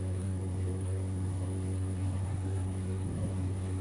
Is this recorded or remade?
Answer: remade